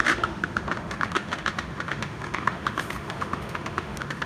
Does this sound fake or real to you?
fake